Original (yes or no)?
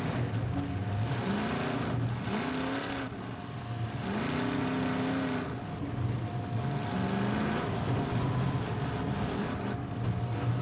yes